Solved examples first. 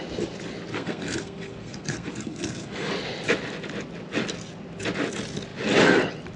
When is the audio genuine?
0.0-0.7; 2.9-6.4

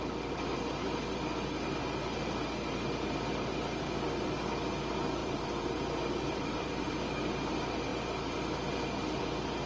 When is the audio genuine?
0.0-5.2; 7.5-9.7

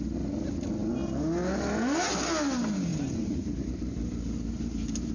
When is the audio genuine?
0.0-2.9

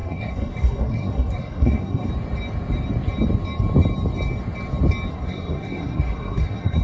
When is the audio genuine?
2.1-5.1